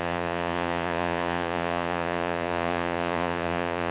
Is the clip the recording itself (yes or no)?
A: no